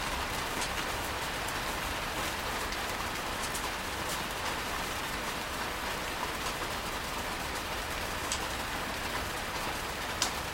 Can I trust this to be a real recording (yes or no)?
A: yes